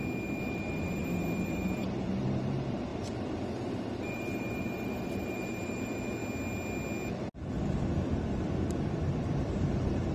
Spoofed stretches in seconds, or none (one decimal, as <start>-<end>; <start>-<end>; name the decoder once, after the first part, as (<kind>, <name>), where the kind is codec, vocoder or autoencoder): 0.5-6.2 (vocoder, BigVGAN v2); 9.0-10.1